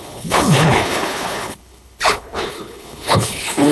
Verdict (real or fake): fake